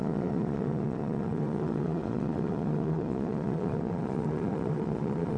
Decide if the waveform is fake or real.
fake